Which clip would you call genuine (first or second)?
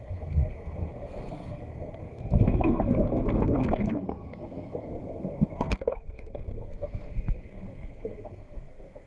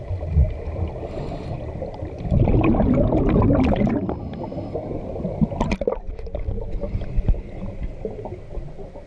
second